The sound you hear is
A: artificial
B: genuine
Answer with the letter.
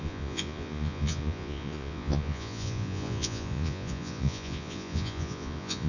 A